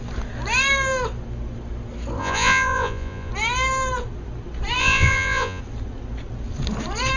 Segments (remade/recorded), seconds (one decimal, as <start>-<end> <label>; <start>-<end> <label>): 0.0-2.2 recorded; 2.2-3.3 remade; 3.3-4.8 recorded; 4.8-5.6 remade; 5.6-7.2 recorded